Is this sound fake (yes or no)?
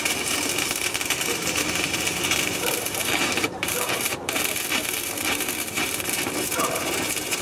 yes